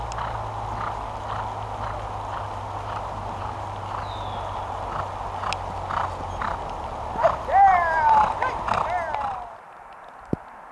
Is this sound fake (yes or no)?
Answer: no